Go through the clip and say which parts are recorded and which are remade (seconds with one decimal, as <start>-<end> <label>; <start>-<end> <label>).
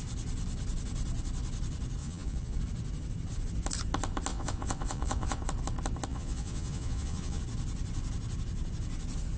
0.0-2.0 recorded; 2.0-2.6 remade; 2.6-4.3 recorded; 4.3-5.4 remade; 5.4-6.1 recorded; 6.1-7.4 remade; 7.4-9.4 recorded